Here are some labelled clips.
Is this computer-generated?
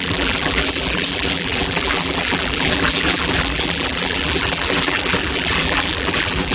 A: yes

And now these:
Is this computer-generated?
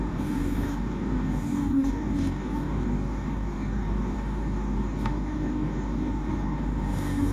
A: yes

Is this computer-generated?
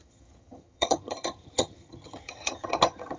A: yes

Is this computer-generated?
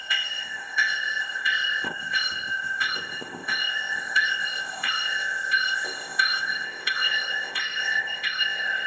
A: yes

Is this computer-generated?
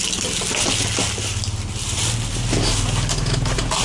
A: no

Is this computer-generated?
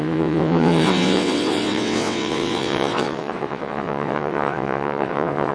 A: yes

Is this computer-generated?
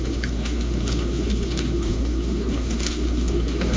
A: yes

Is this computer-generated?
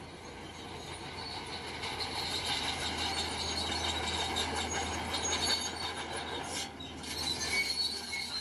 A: no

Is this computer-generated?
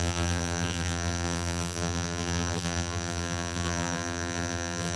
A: yes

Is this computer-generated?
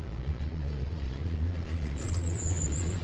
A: yes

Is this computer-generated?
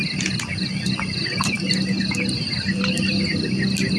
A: no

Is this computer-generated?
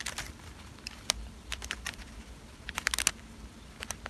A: no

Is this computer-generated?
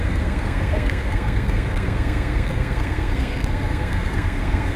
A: yes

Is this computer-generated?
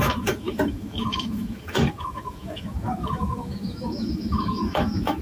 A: yes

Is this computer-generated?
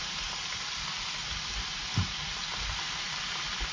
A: no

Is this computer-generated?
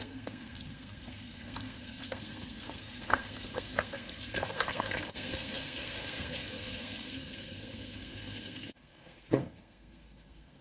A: yes